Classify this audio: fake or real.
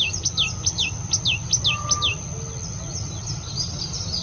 real